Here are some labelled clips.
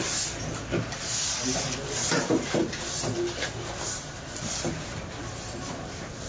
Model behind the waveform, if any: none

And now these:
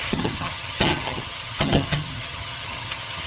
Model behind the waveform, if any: vocoder, HiFi-GAN